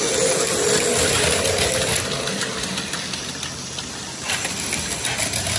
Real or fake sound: real